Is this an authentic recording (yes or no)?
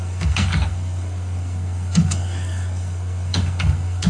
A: no